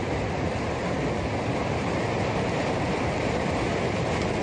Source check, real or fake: real